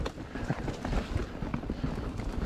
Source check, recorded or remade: recorded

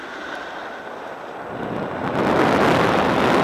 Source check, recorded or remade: recorded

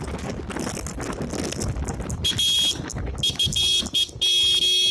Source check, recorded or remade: recorded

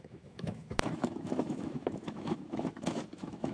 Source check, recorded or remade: remade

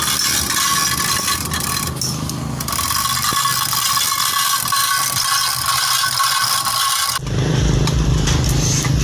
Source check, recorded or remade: recorded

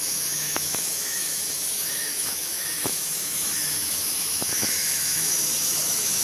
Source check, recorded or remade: remade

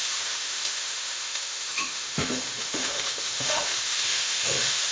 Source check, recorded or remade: remade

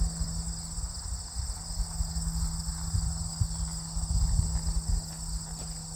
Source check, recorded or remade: recorded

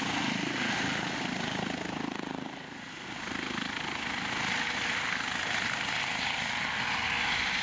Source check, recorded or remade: recorded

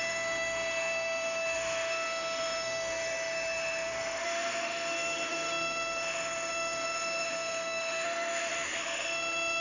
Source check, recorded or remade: remade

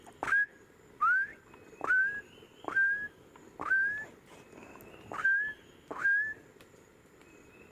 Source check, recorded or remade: recorded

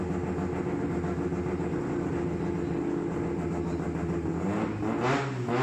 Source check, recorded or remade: recorded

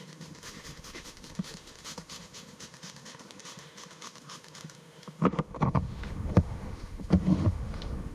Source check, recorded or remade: remade